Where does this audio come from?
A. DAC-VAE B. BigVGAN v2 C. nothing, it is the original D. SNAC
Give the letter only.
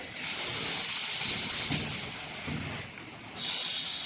C